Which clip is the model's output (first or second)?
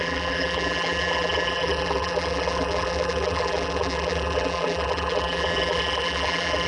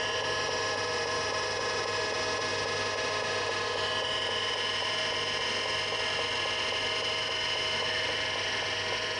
first